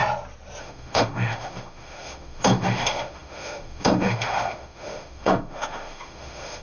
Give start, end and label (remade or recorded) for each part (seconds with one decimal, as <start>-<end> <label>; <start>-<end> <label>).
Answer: 0.0-0.6 recorded; 0.6-6.6 remade